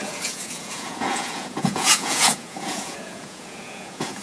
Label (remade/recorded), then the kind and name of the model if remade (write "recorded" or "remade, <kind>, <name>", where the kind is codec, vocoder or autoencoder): remade, vocoder, Vocos